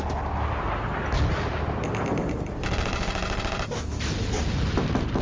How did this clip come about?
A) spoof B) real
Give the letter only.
B